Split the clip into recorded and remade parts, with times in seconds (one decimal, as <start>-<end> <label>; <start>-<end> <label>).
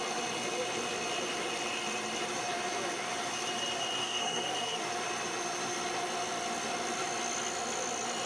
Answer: 0.0-4.0 recorded; 4.0-4.8 remade; 4.8-8.3 recorded